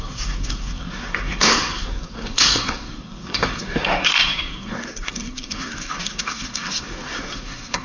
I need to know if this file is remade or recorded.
remade